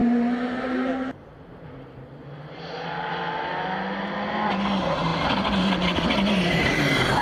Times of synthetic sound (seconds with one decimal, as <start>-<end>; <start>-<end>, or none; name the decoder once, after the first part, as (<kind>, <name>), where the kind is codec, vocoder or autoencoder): none